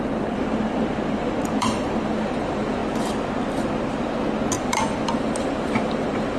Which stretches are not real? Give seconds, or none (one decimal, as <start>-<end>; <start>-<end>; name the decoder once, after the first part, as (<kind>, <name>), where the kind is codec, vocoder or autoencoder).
0.0-2.8 (vocoder, BigVGAN v2); 4.6-6.4